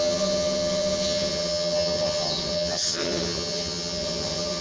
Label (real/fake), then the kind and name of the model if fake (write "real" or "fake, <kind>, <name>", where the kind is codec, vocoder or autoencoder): fake, vocoder, HiFi-GAN